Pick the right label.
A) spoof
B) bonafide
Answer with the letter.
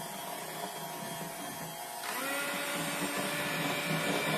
B